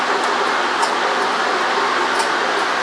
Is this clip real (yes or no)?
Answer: yes